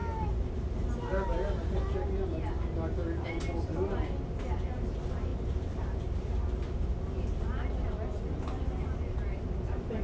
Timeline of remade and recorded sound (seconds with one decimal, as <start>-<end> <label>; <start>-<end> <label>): 0.0-10.0 recorded